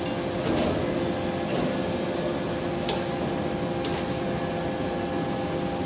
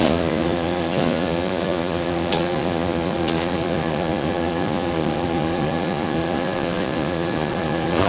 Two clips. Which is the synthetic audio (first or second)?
second